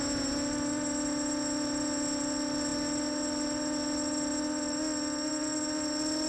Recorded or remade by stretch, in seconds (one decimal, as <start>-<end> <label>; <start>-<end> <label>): 0.0-6.3 recorded